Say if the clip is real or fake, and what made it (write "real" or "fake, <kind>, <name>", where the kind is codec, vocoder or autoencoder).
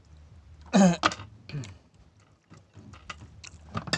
real